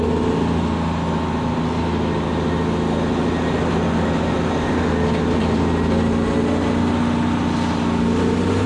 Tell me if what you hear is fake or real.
real